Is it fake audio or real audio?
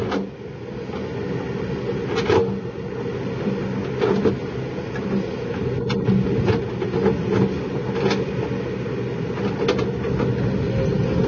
real